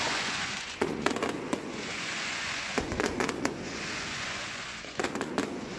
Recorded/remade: remade